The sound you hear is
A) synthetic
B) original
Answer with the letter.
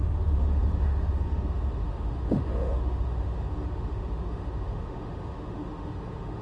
A